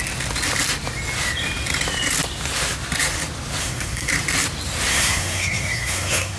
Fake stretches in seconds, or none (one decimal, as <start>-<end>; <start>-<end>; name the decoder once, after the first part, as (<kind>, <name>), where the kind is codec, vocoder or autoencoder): 3.6-4.1 (codec, SNAC); 4.9-6.4